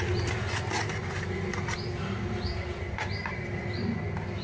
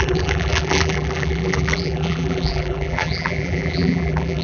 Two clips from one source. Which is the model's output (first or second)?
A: second